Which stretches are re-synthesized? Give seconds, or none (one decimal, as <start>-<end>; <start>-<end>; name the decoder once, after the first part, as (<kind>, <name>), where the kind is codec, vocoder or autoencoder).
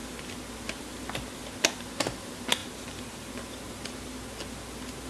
2.6-3.3 (vocoder, BigVGAN v2)